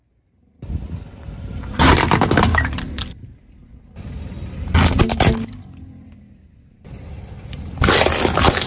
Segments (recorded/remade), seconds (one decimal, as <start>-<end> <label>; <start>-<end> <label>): 0.0-8.7 recorded